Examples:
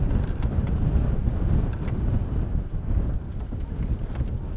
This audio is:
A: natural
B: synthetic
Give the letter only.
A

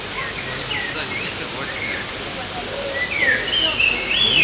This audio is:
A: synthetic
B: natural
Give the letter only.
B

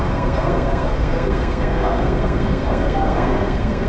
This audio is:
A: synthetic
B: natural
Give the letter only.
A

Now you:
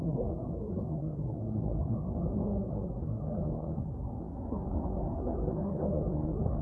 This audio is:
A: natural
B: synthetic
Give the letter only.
B